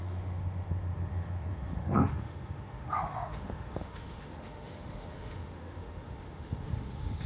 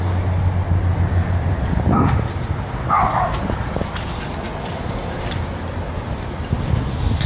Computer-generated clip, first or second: first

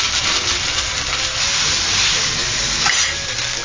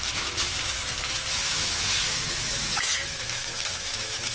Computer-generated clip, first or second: second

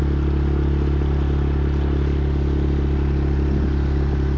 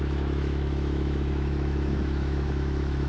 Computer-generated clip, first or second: second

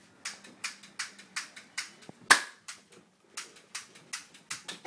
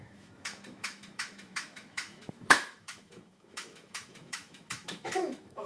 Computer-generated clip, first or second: second